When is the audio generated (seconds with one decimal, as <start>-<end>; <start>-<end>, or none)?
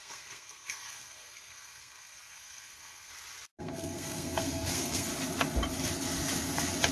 0.0-3.1; 3.6-5.1